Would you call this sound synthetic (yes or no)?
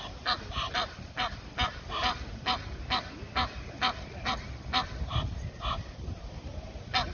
no